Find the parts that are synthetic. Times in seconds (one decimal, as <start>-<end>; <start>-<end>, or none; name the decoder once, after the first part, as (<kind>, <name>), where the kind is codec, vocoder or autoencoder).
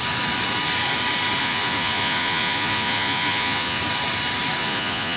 1.4-3.8 (vocoder, Vocos); 4.6-5.2